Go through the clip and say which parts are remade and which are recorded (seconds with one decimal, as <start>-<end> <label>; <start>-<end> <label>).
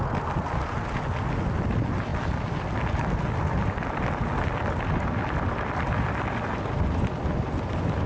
0.0-8.1 recorded